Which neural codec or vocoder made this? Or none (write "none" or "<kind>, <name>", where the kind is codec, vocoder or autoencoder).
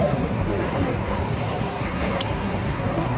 codec, SNAC